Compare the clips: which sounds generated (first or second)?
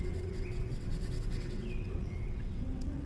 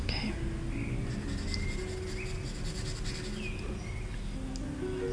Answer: first